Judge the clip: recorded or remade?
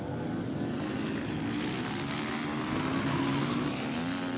recorded